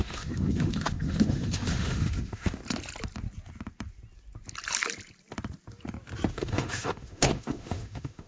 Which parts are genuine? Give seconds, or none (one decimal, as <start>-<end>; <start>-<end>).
2.6-6.3